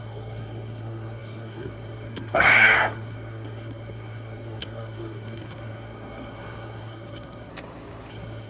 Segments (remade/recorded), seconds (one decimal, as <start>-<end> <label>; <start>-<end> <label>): 0.0-7.5 remade; 7.5-8.1 recorded; 8.1-8.5 remade